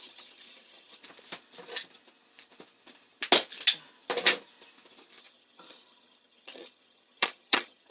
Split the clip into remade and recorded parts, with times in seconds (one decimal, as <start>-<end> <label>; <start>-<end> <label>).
0.0-1.0 remade; 1.0-5.2 recorded; 5.2-7.9 remade